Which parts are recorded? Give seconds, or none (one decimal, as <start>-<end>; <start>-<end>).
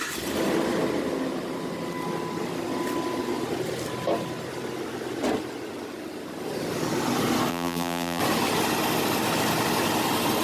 0.0-7.5; 8.2-10.4